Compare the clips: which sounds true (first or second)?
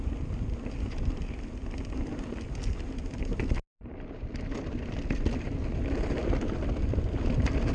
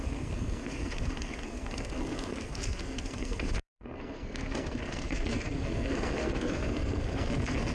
first